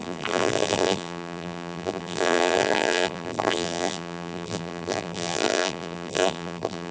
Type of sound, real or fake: fake